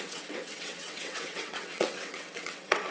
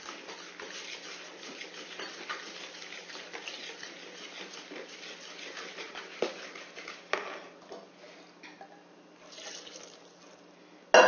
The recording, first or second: second